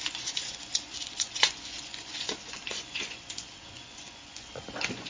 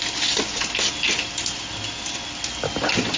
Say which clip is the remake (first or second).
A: first